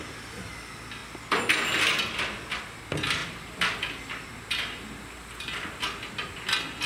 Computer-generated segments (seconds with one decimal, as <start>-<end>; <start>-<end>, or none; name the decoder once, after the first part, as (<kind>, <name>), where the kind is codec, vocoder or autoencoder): 3.2-5.8 (vocoder, BigVGAN v2)